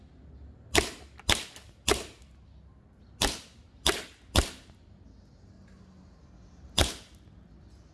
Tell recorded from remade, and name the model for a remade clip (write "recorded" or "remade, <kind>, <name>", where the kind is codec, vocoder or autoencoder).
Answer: recorded